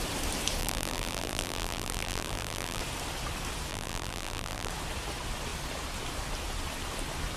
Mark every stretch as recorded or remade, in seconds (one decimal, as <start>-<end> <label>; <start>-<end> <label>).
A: 0.0-0.6 recorded; 0.6-2.8 remade; 2.8-3.7 recorded; 3.7-4.7 remade; 4.7-7.4 recorded